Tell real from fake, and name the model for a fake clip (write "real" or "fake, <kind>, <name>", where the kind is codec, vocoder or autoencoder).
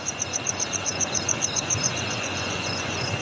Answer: fake, vocoder, Vocos